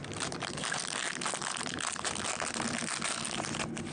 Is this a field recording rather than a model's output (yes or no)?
yes